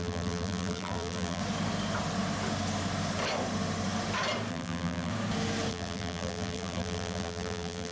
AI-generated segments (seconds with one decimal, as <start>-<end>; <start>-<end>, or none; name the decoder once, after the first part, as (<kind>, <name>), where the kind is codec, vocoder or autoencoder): 0.0-1.4 (vocoder, BigVGAN v2); 4.5-5.1; 5.7-7.9